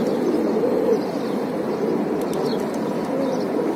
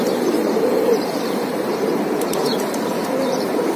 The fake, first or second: second